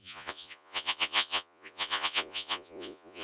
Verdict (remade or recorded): remade